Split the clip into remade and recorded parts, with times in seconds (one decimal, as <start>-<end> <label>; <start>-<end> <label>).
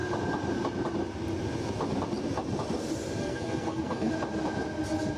0.0-3.2 recorded; 3.2-4.1 remade; 4.1-5.2 recorded